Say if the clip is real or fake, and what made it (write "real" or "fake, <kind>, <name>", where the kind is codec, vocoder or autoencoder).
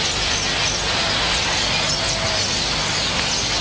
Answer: real